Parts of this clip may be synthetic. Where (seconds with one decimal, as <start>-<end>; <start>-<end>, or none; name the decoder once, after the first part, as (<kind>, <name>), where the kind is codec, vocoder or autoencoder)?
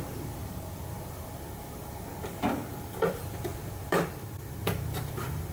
0.0-0.4 (vocoder, BigVGAN v2); 3.0-5.5